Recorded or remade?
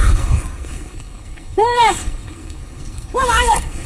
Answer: remade